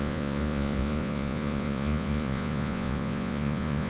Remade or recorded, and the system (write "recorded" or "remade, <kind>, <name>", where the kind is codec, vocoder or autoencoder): remade, vocoder, Vocos